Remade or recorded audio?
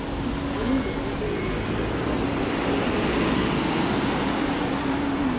recorded